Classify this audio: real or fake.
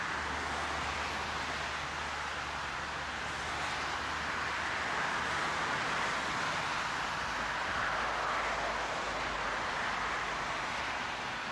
real